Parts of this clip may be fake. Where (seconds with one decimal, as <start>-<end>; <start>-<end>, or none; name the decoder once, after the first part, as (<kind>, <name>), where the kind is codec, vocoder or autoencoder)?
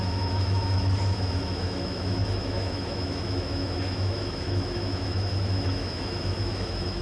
0.0-7.0 (autoencoder, DAC-VAE)